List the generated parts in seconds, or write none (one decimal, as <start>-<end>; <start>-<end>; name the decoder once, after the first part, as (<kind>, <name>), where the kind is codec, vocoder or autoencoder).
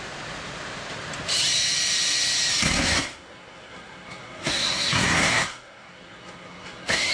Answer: 2.6-7.1 (codec, SNAC)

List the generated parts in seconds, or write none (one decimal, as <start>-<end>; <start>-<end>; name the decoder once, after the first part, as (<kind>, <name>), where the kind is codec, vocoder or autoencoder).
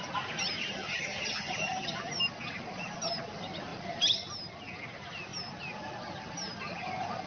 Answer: 0.6-2.1 (vocoder, HiFi-GAN)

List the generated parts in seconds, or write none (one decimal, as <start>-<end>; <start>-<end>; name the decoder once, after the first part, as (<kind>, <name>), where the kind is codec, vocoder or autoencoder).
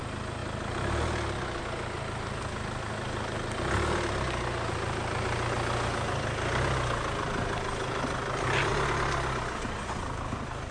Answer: none